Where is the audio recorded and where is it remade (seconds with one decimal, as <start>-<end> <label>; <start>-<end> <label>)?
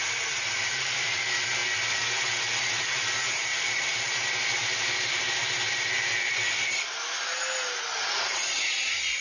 0.0-1.6 remade; 1.6-2.4 recorded; 2.4-3.5 remade; 3.5-8.1 recorded; 8.1-9.2 remade